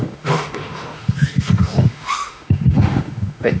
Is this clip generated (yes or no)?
yes